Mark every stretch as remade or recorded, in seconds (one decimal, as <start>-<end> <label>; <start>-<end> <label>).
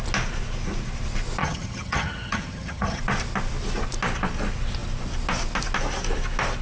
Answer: 0.0-1.4 recorded; 1.4-3.0 remade; 3.0-6.6 recorded